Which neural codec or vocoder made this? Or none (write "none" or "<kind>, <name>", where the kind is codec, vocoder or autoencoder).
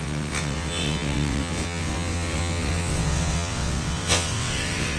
vocoder, WaveNeXt